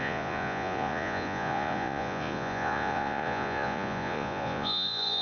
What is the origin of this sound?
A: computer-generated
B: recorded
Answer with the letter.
A